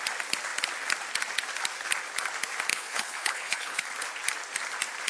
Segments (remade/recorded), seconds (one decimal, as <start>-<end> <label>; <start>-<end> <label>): 0.0-2.7 recorded; 2.7-3.8 remade; 3.8-5.1 recorded